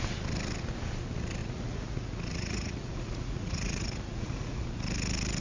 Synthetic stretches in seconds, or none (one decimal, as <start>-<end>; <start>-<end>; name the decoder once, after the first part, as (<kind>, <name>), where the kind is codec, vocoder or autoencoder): 1.4-4.6 (vocoder, Vocos)